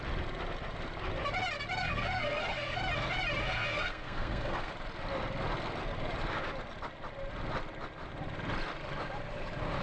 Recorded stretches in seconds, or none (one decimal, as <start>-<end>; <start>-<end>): 0.0-1.8; 2.8-3.4; 4.7-9.8